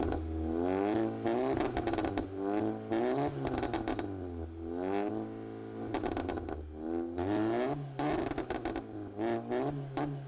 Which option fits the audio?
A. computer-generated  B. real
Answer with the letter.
B